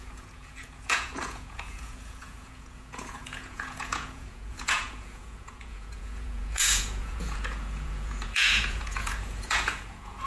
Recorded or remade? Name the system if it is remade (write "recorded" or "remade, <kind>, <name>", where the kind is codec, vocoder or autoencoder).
remade, vocoder, Vocos